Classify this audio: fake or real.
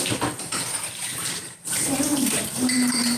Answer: fake